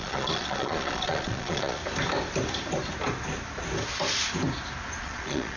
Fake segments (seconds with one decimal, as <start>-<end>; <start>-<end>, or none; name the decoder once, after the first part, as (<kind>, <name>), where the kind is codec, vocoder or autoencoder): 0.0-1.8 (vocoder, Vocos); 5.0-5.6

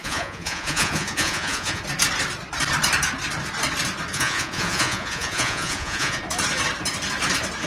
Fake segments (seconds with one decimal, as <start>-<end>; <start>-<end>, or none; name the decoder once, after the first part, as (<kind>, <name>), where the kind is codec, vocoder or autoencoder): 0.0-1.8 (vocoder, Vocos); 4.1-6.2

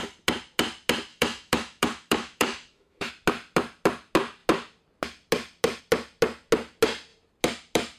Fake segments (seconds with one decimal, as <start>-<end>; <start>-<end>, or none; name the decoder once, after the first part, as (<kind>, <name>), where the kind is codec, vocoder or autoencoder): 1.1-3.1 (autoencoder, DAC-VAE)